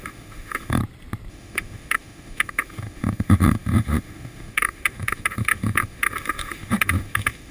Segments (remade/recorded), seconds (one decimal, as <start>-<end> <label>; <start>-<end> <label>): 0.0-0.8 remade; 0.8-1.3 recorded; 1.3-7.5 remade